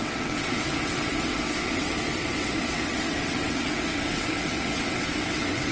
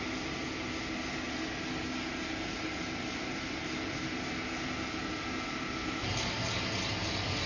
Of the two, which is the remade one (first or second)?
first